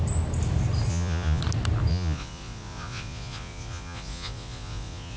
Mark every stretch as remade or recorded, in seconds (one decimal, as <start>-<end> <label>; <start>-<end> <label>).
0.0-0.9 recorded; 0.9-1.4 remade; 1.4-1.9 recorded; 1.9-5.2 remade